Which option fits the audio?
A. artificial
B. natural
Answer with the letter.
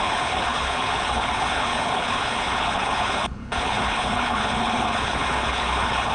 A